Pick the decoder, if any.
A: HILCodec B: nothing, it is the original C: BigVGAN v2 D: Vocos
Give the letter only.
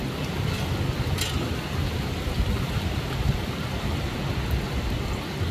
B